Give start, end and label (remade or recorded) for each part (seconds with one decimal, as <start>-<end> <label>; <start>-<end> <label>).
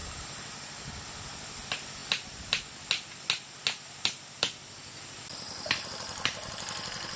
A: 0.0-1.0 remade; 1.0-7.2 recorded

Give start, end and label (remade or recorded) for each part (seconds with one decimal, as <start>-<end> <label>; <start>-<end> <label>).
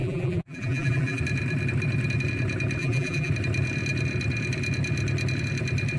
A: 0.0-1.2 remade; 1.2-2.8 recorded; 2.8-3.3 remade; 3.3-6.0 recorded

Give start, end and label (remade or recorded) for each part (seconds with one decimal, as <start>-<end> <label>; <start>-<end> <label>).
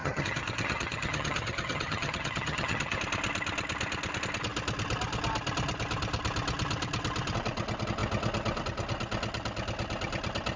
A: 0.0-3.0 remade; 3.0-10.6 recorded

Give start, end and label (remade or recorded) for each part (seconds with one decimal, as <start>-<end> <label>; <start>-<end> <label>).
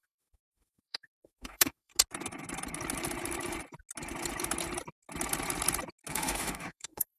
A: 0.0-1.9 remade; 1.9-6.1 recorded; 6.1-7.2 remade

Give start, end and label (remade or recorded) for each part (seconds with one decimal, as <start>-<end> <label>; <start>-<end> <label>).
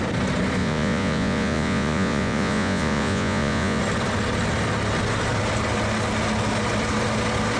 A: 0.0-0.6 recorded; 0.6-3.8 remade; 3.8-7.6 recorded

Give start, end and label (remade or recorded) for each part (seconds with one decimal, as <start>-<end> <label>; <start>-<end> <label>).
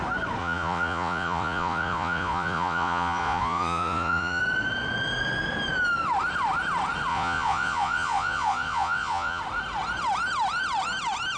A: 0.0-0.4 recorded; 0.4-4.4 remade; 4.4-7.1 recorded; 7.1-9.4 remade; 9.4-11.4 recorded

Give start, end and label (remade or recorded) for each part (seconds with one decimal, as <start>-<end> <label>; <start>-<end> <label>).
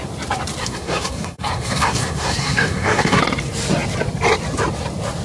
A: 0.0-0.6 recorded; 0.6-3.2 remade; 3.2-5.2 recorded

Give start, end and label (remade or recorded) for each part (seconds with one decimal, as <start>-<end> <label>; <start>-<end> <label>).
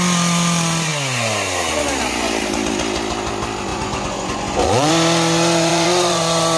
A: 0.0-3.7 recorded; 3.7-4.9 remade; 4.9-5.7 recorded; 5.7-6.6 remade